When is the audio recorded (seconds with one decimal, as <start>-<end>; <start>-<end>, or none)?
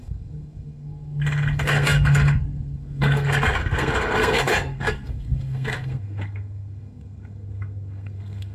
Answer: none